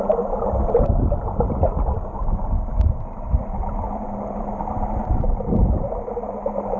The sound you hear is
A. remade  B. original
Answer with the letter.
B